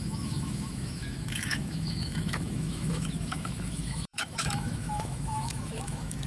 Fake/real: fake